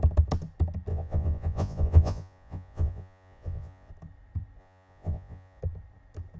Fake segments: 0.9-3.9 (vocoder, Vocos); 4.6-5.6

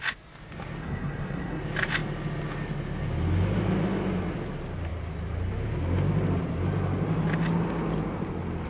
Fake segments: 0.8-1.6 (codec, SNAC)

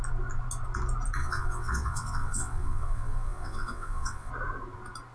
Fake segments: 1.2-4.3 (vocoder, WaveNeXt)

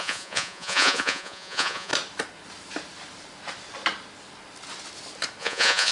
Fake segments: 0.0-1.9 (vocoder, Vocos); 5.4-5.9

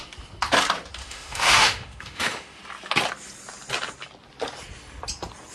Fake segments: 1.0-2.6 (autoencoder, DAC-VAE)

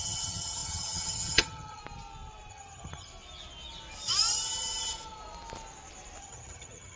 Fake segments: 0.0-1.8 (vocoder, HiFi-GAN); 2.5-3.1; 6.2-7.0

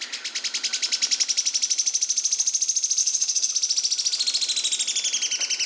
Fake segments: 3.0-3.5 (codec, DAC)

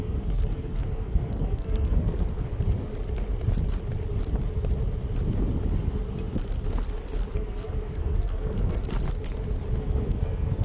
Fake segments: 0.0-2.5 (codec, SNAC); 7.3-8.8; 9.8-10.6